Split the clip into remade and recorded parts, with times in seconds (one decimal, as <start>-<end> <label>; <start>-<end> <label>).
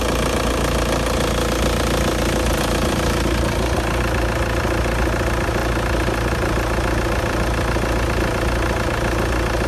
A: 0.0-2.5 recorded; 2.5-4.0 remade; 4.0-9.7 recorded